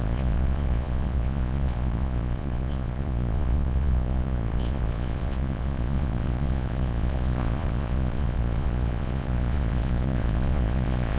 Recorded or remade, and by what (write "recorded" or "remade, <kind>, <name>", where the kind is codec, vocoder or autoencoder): remade, vocoder, Vocos